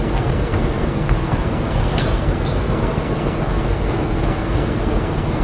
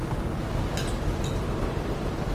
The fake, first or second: first